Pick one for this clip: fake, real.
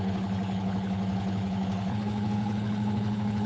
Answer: fake